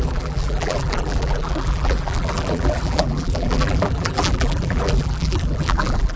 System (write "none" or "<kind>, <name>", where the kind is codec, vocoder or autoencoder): vocoder, BigVGAN v2